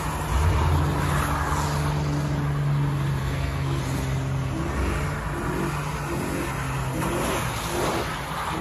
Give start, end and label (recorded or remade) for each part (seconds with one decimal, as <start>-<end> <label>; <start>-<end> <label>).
0.0-3.2 recorded; 3.2-3.8 remade; 3.8-8.6 recorded